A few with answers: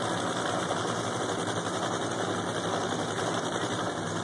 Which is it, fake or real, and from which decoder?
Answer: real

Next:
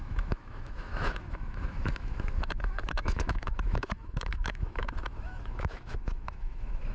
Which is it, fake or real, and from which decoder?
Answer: fake, autoencoder, DAC-VAE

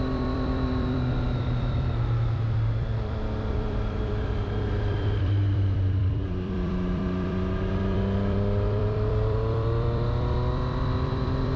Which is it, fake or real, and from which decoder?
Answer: fake, vocoder, BigVGAN v2